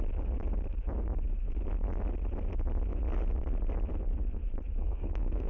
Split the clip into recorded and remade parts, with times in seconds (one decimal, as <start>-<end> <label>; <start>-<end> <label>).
0.0-4.8 recorded; 4.8-5.5 remade